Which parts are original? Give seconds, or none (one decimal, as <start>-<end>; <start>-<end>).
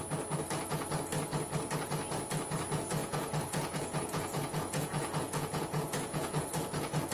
0.0-3.0